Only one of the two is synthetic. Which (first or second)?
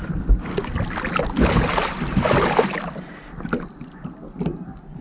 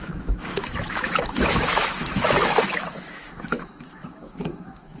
second